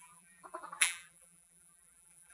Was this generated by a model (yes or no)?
yes